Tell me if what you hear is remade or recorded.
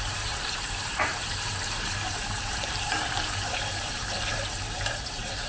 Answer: remade